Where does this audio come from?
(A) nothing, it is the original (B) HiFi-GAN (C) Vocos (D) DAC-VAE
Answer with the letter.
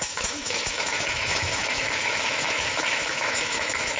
D